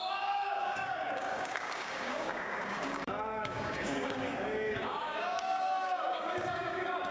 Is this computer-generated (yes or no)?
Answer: yes